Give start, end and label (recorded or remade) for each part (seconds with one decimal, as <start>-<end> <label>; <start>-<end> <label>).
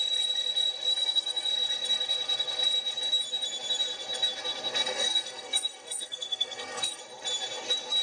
0.0-0.9 recorded; 0.9-1.5 remade; 1.5-4.8 recorded; 4.8-7.0 remade; 7.0-8.0 recorded